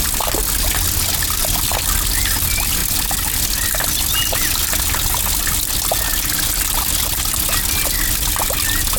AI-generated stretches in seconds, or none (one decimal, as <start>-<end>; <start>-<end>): none

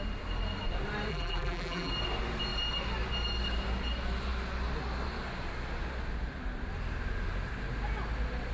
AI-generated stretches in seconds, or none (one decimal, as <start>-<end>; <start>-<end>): 1.1-1.9

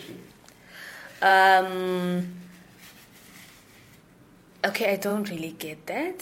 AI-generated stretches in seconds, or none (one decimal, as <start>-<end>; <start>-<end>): none

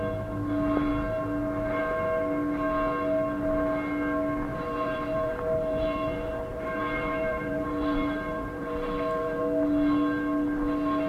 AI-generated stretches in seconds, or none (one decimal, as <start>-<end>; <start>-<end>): 4.5-9.4

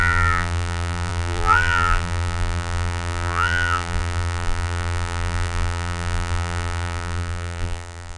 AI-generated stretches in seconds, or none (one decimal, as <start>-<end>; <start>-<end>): 0.0-8.2